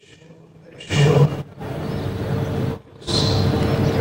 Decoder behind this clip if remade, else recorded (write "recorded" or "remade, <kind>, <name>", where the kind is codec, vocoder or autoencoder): recorded